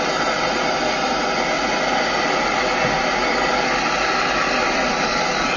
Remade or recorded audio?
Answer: recorded